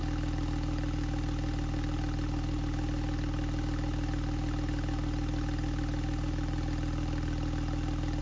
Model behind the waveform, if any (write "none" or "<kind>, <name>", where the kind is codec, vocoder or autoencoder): none